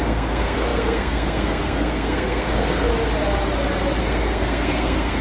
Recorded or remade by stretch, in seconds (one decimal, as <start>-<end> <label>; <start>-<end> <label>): 0.0-2.9 remade; 2.9-4.0 recorded; 4.0-5.2 remade